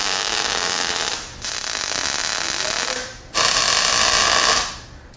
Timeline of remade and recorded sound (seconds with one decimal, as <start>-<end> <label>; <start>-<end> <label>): 0.0-0.9 remade; 0.9-5.2 recorded